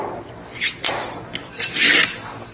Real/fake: real